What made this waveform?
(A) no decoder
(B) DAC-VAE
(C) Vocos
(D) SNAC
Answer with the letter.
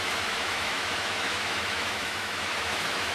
B